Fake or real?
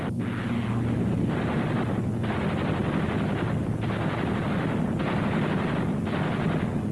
real